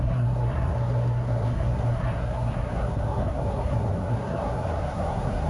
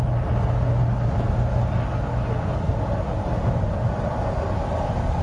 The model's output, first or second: first